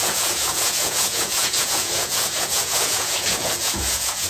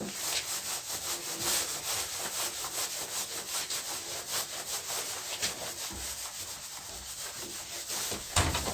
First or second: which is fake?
first